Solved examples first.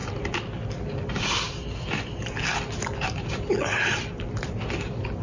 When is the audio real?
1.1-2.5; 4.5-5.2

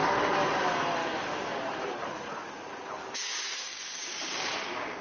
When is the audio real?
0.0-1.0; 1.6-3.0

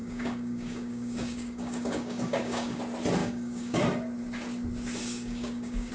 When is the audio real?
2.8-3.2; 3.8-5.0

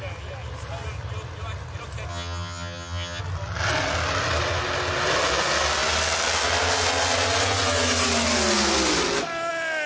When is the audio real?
0.0-2.1; 3.2-9.9

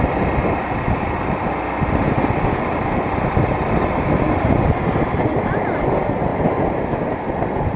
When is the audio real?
0.4-4.9; 6.3-7.2

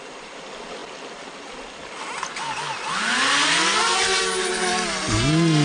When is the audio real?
0.0-5.6